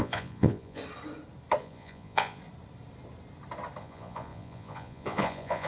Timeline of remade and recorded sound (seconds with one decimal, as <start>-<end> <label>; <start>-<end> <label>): 0.0-0.8 remade; 0.8-1.6 recorded; 1.6-2.4 remade; 2.4-3.8 recorded; 3.8-5.7 remade